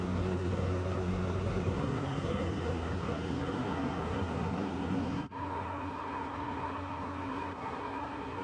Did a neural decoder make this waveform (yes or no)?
yes